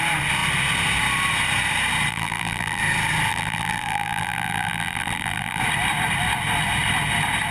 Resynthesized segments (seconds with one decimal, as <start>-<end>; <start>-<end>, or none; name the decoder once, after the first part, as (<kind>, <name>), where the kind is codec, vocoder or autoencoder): 2.1-2.8 (vocoder, BigVGAN v2); 3.3-5.6